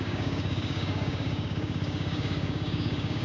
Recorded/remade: remade